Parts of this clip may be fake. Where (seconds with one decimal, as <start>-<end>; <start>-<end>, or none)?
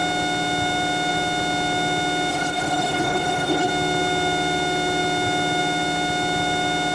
2.3-3.7